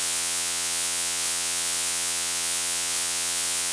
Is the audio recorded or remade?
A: remade